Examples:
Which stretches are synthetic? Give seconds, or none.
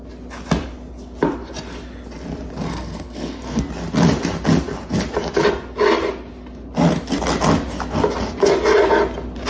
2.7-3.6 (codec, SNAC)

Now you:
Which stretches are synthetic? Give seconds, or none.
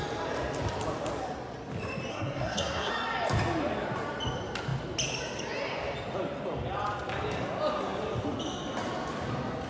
2.1-2.9 (codec, SNAC)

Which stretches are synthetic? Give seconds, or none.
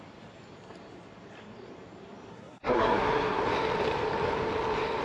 2.3-3.4 (codec, SNAC)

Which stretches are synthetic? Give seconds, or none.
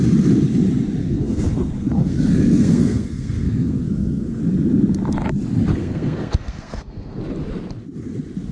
1.0-4.4 (codec, SNAC); 5.8-7.2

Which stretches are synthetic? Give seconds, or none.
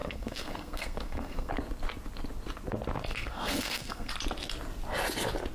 0.0-1.5 (codec, SNAC); 3.1-4.1